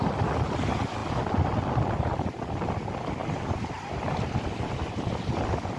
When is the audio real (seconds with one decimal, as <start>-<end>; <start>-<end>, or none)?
0.0-3.2; 4.6-5.8